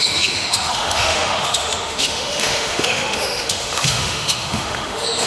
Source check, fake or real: fake